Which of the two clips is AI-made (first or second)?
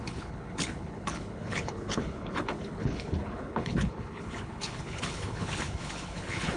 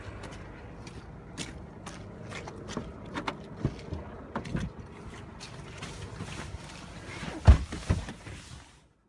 first